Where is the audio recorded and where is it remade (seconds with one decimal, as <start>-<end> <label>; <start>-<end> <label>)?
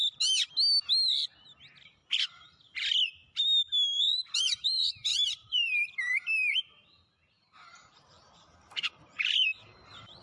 0.0-4.0 recorded; 4.0-4.6 remade; 4.6-5.1 recorded; 5.1-10.2 remade